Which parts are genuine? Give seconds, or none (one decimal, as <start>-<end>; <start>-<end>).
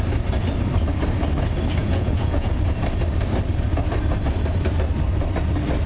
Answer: 0.0-1.8; 2.5-5.9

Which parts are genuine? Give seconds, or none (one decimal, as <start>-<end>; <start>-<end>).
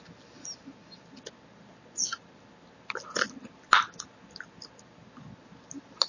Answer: 0.0-6.1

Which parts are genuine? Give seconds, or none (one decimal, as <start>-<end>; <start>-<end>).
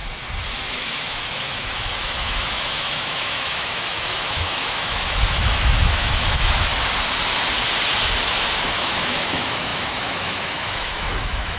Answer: 0.0-0.7; 6.7-8.7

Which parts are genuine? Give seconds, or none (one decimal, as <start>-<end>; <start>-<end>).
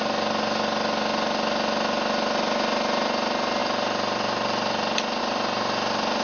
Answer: 0.0-6.2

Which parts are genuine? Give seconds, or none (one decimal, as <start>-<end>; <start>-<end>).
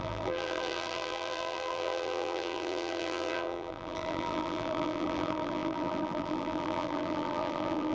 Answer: none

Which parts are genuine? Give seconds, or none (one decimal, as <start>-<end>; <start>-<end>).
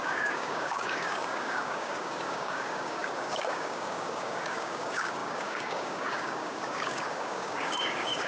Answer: none